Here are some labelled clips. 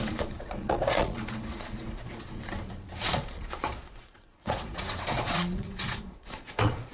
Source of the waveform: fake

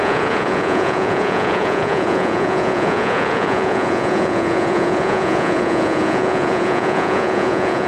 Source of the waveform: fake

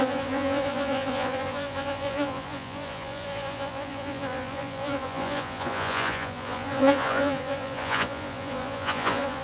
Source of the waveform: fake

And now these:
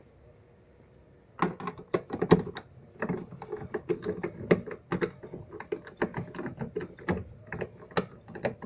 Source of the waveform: real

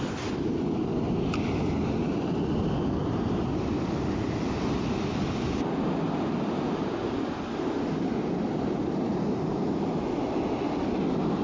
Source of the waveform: real